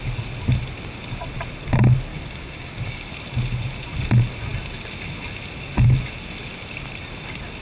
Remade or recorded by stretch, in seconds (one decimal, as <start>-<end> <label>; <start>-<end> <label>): 0.0-2.1 recorded; 2.1-3.1 remade; 3.1-7.6 recorded